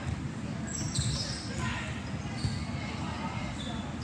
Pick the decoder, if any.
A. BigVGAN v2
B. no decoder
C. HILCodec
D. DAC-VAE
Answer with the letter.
B